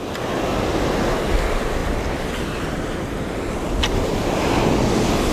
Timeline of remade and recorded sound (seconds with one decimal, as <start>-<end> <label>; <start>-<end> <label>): 0.0-5.3 recorded